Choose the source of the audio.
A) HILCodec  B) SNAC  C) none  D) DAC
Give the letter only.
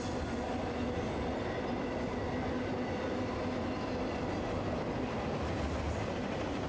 C